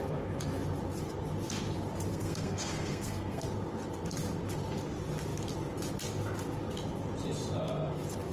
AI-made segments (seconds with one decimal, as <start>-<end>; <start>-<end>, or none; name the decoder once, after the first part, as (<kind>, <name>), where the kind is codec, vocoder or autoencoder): 2.1-3.5 (codec, SNAC)